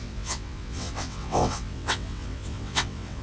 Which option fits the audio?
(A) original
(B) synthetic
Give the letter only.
B